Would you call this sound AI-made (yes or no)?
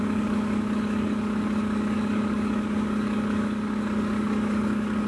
yes